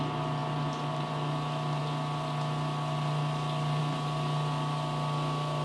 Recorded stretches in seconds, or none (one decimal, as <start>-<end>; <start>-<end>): 0.0-5.6